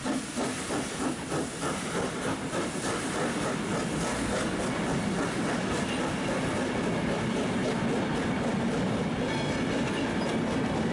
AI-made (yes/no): no